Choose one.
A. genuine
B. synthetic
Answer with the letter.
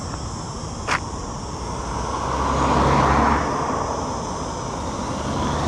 A